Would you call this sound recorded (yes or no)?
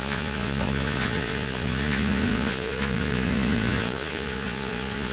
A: no